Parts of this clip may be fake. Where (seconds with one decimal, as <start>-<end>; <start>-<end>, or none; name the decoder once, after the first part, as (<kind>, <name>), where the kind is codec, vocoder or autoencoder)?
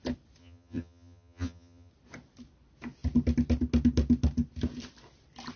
0.4-1.9 (vocoder, HiFi-GAN)